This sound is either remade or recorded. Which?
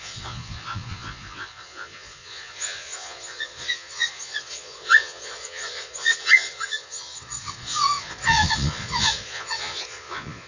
remade